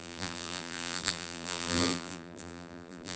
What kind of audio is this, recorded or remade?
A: remade